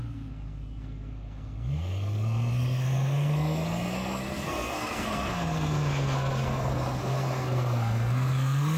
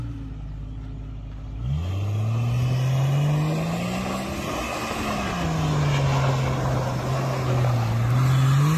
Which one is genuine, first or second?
second